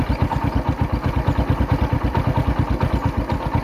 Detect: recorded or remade recorded